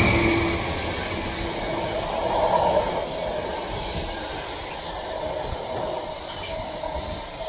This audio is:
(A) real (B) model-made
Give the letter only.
A